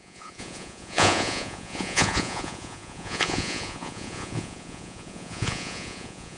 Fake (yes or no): yes